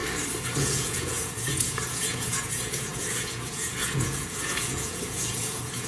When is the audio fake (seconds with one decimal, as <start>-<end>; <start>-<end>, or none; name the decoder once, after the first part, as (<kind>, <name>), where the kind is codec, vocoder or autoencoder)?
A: 0.6-5.9 (vocoder, Vocos)